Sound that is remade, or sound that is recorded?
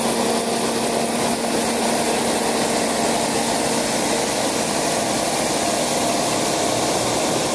recorded